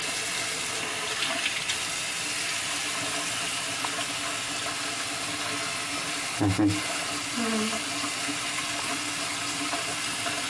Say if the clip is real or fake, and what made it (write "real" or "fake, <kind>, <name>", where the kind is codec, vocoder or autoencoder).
real